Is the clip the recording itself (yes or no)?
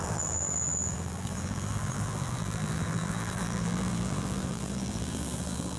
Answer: no